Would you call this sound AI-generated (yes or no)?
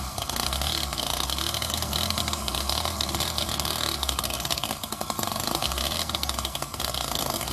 yes